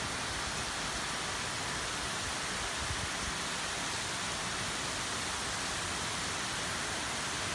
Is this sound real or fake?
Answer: real